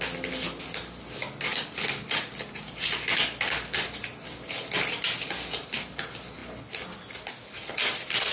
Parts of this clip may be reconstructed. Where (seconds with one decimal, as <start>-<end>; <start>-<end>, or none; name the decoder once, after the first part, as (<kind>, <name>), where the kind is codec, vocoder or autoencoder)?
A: none